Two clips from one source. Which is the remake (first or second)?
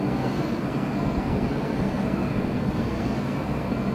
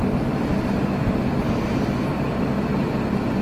first